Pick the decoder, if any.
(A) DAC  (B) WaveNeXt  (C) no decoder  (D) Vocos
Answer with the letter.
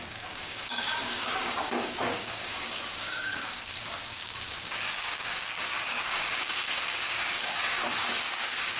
A